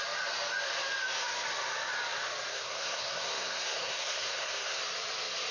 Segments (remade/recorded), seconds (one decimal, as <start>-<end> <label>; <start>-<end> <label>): 0.0-2.5 recorded; 2.5-4.8 remade; 4.8-5.5 recorded